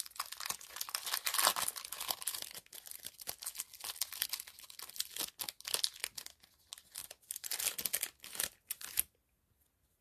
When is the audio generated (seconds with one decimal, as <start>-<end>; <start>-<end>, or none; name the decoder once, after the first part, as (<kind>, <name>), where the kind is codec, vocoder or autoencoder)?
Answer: none